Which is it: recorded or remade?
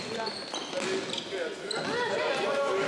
recorded